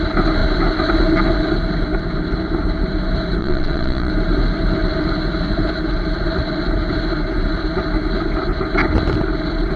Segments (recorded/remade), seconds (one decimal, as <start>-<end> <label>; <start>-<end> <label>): 0.0-3.4 recorded; 3.4-4.1 remade; 4.1-9.8 recorded